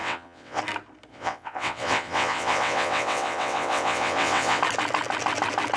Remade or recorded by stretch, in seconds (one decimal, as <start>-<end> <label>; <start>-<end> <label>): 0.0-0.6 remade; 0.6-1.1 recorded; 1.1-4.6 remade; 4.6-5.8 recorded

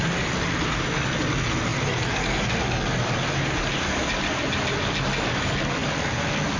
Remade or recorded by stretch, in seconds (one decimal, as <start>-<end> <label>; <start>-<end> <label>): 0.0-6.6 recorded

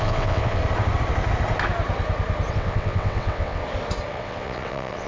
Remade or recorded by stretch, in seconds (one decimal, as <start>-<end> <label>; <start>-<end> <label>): 0.0-0.6 remade; 0.6-2.5 recorded; 2.5-3.6 remade; 3.6-4.1 recorded; 4.1-5.1 remade

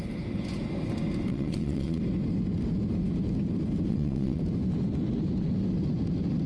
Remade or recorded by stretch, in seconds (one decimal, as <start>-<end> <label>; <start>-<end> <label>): 0.0-1.3 recorded; 1.3-2.0 remade; 2.0-3.9 recorded; 3.9-4.4 remade; 4.4-6.5 recorded